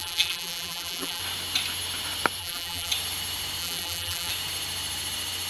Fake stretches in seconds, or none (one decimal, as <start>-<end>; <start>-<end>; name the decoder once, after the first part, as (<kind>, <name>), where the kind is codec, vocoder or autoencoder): 0.0-1.2 (vocoder, BigVGAN v2); 2.4-2.9; 3.6-4.3